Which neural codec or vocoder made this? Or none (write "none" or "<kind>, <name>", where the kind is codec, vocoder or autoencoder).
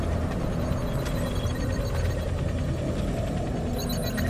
none